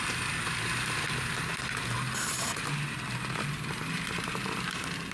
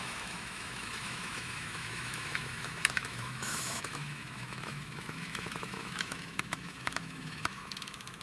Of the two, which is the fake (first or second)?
second